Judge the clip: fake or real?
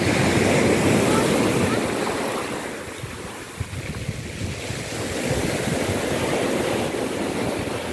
real